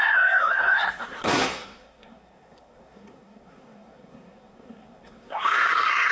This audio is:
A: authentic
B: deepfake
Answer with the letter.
B